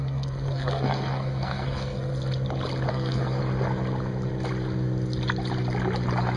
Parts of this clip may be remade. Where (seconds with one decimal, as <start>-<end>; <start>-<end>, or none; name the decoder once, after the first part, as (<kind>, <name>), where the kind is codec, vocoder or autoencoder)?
0.0-2.1 (codec, SNAC); 2.9-3.4